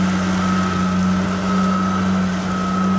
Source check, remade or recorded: recorded